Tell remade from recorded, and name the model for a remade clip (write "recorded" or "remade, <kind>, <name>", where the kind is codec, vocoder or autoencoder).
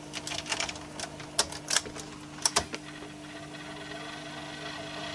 recorded